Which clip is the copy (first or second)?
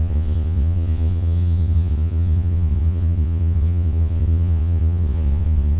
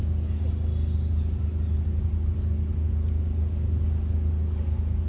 first